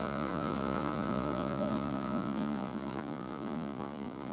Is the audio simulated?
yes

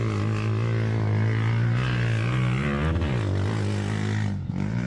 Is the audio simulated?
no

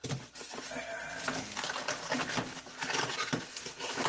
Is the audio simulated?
no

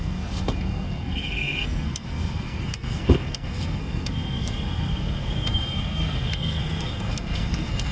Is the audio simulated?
yes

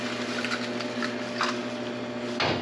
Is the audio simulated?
no